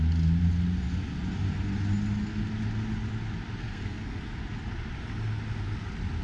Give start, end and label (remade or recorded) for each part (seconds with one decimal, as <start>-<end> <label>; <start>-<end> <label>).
0.0-3.6 recorded; 3.6-4.2 remade; 4.2-6.2 recorded